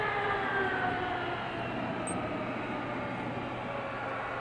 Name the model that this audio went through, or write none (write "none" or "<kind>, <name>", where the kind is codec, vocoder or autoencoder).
none